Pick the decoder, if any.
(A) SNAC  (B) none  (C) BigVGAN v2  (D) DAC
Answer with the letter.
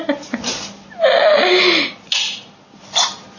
B